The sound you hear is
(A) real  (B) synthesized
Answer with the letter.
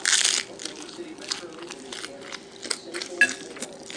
A